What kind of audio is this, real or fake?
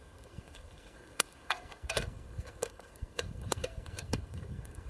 fake